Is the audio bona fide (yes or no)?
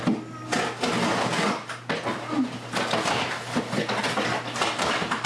yes